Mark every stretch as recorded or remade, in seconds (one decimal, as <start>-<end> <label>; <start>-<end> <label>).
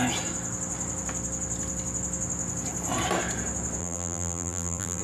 0.0-3.8 recorded; 3.8-5.0 remade